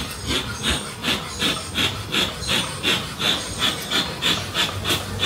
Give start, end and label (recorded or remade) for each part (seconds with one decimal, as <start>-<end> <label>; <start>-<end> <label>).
0.0-5.3 recorded